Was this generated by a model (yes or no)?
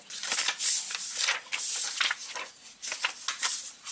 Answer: no